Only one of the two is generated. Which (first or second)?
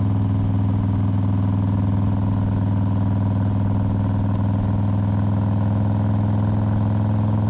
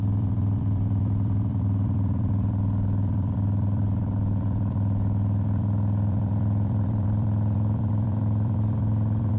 second